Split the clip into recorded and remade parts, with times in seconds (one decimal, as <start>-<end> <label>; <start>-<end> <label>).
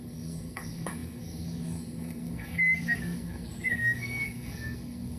0.0-5.2 remade